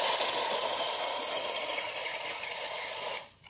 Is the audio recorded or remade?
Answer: recorded